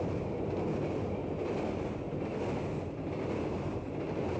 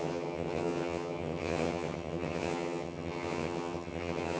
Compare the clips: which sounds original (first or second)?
first